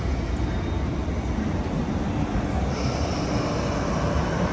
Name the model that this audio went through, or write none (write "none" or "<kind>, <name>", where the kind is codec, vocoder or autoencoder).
none